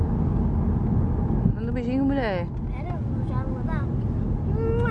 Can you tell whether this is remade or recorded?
recorded